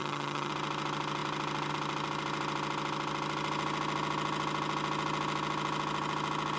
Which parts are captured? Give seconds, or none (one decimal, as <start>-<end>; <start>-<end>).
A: 0.5-6.6

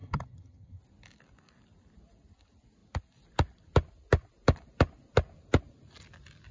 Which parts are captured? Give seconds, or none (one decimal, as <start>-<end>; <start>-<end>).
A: 0.8-6.5